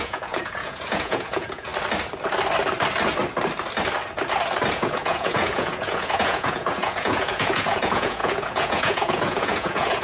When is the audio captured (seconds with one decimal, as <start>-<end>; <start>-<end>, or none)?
1.7-4.7